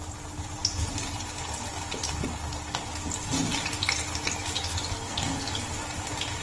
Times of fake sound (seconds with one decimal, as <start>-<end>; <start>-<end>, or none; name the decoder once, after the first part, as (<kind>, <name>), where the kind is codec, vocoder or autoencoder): 4.9-5.5 (codec, SNAC)